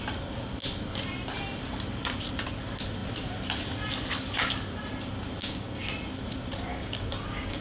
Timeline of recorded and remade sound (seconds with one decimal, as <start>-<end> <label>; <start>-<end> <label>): 0.0-5.4 recorded; 5.4-5.9 remade; 5.9-6.7 recorded; 6.7-7.6 remade